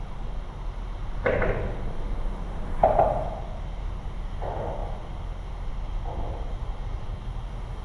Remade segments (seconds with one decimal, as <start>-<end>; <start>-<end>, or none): none